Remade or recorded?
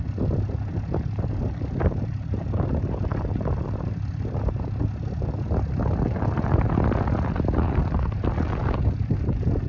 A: recorded